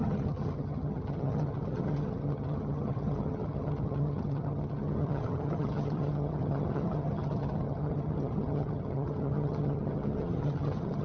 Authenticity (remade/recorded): remade